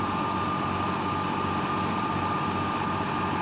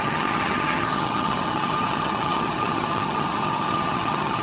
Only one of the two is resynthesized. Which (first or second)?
second